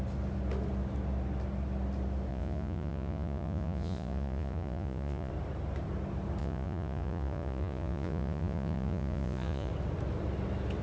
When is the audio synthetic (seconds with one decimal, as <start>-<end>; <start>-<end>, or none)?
2.3-5.3; 6.4-9.7